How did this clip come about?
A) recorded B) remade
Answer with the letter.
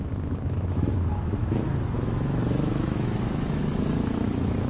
B